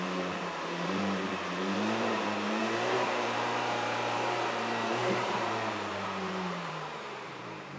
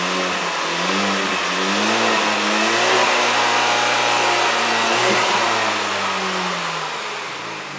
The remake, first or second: first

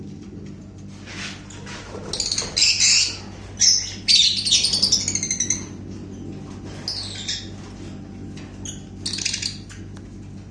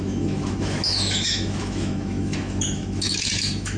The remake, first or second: second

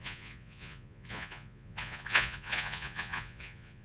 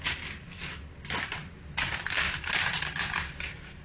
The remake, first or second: first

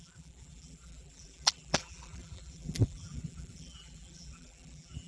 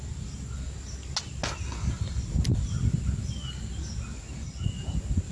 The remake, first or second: first